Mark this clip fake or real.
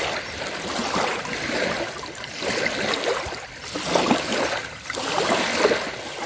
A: real